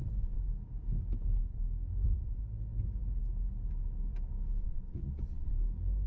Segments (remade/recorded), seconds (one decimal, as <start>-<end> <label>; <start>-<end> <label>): 0.0-4.6 recorded; 4.6-5.5 remade; 5.5-6.1 recorded